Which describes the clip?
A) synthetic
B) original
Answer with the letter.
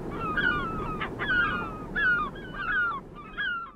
B